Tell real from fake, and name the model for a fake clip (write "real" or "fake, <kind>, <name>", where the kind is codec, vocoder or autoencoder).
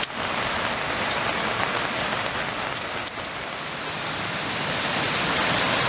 real